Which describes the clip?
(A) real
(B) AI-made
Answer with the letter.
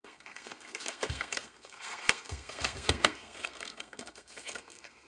B